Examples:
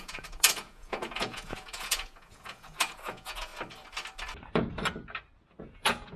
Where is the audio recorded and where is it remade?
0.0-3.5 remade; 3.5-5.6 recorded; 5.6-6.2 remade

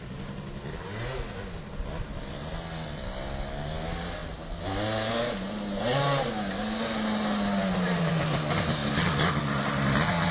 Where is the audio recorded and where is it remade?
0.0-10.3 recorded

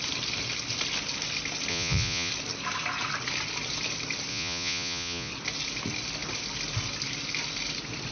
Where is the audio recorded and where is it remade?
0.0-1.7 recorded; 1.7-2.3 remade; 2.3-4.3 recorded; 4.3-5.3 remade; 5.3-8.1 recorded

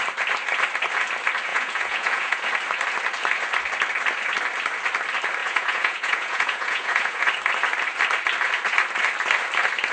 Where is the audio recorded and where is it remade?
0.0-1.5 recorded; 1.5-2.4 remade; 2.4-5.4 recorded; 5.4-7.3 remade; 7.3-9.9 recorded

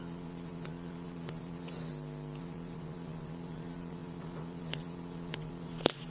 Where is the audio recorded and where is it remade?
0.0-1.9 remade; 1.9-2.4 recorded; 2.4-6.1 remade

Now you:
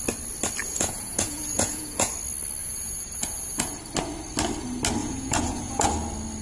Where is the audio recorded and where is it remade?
0.0-0.6 recorded; 0.6-2.1 remade; 2.1-2.6 recorded; 2.6-3.8 remade; 3.8-5.0 recorded; 5.0-5.9 remade; 5.9-6.4 recorded

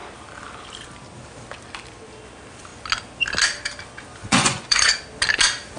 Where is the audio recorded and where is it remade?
0.0-4.2 recorded; 4.2-5.0 remade; 5.0-5.8 recorded

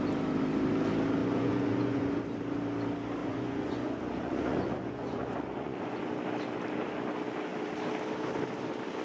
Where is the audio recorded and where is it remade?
0.0-1.2 recorded; 1.2-2.1 remade; 2.1-3.2 recorded; 3.2-6.1 remade; 6.1-9.0 recorded